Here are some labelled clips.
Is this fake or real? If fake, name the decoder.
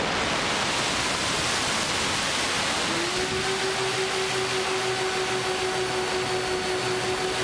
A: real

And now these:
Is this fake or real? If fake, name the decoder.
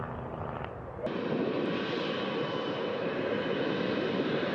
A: real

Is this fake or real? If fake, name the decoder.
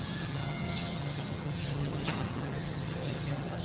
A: fake, vocoder, HiFi-GAN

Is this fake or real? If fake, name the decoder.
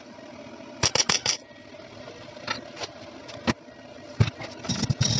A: real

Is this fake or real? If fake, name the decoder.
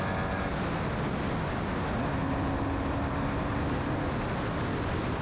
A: real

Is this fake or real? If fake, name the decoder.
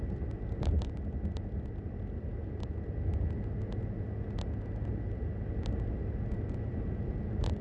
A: real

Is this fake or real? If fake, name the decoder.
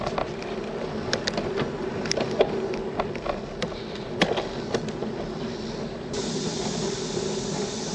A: real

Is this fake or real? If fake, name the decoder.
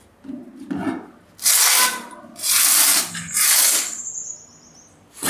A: real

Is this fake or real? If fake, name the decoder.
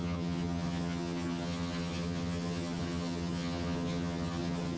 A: fake, vocoder, HiFi-GAN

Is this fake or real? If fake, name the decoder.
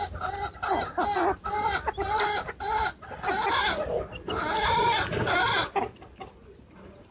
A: real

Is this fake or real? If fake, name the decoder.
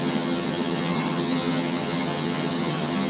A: fake, vocoder, HiFi-GAN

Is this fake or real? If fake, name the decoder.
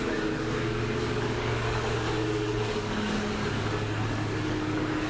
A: fake, codec, DAC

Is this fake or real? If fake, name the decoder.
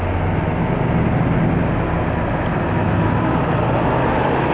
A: real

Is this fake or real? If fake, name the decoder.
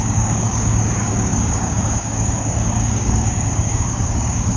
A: fake, codec, DAC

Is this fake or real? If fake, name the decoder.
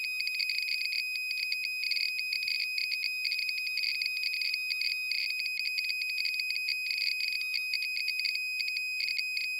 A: real